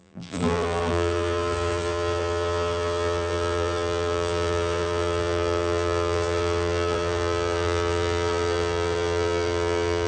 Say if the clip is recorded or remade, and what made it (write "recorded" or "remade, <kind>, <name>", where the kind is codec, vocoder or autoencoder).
remade, vocoder, BigVGAN v2